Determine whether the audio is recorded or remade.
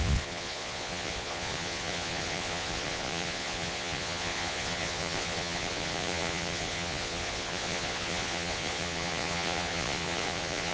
remade